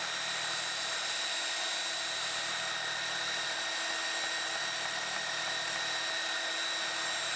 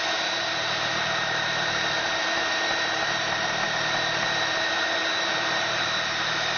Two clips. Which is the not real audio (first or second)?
second